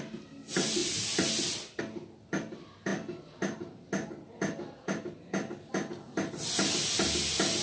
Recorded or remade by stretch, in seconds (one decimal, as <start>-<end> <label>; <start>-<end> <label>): 0.0-7.6 recorded